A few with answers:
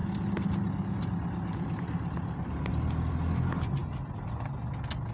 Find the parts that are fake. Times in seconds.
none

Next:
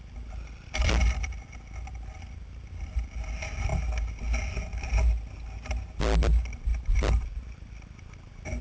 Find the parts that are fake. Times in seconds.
none

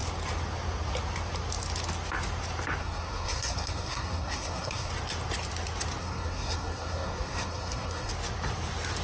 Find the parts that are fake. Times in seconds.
2.8-4.9 (codec, SNAC); 6.0-8.1

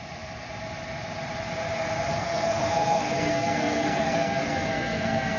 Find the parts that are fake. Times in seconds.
2.1-5.4 (codec, SNAC)

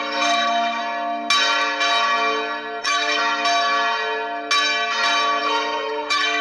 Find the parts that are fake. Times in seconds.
0.0-0.8 (codec, SNAC); 2.8-3.2; 5.4-6.4